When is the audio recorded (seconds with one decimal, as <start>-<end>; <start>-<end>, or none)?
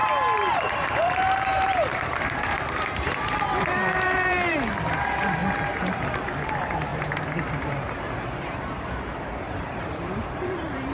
0.0-0.5; 5.4-6.0